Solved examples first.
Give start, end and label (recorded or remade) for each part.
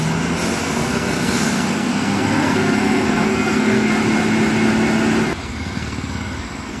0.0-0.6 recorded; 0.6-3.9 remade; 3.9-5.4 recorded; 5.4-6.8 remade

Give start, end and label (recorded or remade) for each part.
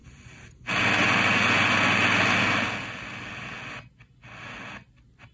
0.0-5.3 recorded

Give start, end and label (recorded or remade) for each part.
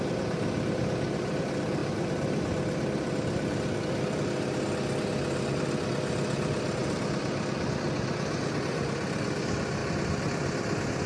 0.0-11.1 recorded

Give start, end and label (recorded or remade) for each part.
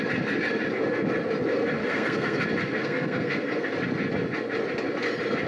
0.0-1.8 recorded; 1.8-2.4 remade; 2.4-2.8 recorded; 2.8-3.7 remade; 3.7-5.5 recorded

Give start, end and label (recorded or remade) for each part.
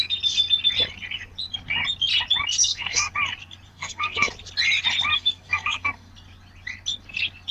0.0-2.6 recorded; 2.6-3.1 remade; 3.1-3.7 recorded; 3.7-4.3 remade; 4.3-5.1 recorded; 5.1-6.1 remade; 6.1-7.5 recorded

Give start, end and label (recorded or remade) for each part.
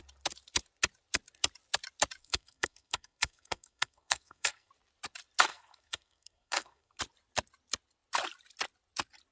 0.0-2.2 recorded; 2.2-4.7 remade; 4.7-5.5 recorded; 5.5-7.0 remade; 7.0-9.3 recorded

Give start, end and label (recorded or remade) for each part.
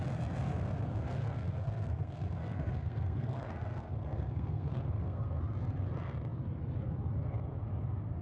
0.0-0.5 recorded; 0.5-5.4 remade; 5.4-8.2 recorded